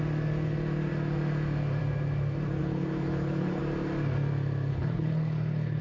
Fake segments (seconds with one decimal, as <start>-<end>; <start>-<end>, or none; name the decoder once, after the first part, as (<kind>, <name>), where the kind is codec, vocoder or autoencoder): 2.6-3.6 (codec, HILCodec); 4.7-5.8